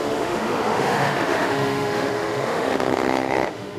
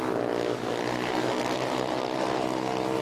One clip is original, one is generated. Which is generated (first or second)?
first